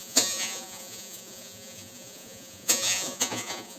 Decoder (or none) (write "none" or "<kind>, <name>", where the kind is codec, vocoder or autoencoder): vocoder, Vocos